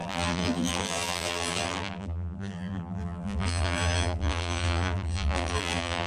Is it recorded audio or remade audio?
remade